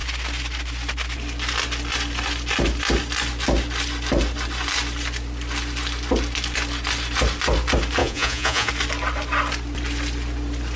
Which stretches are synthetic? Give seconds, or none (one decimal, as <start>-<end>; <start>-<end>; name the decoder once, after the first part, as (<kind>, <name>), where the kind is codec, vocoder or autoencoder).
8.0-8.7 (vocoder, Vocos)